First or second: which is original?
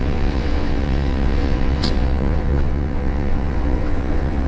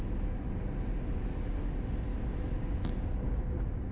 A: second